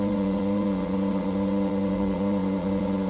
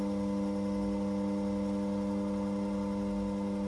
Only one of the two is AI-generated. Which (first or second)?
first